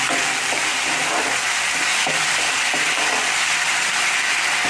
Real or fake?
real